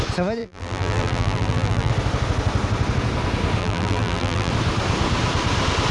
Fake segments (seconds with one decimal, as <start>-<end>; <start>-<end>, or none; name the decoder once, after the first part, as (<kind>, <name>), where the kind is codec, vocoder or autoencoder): 0.4-1.9 (vocoder, BigVGAN v2); 3.6-4.5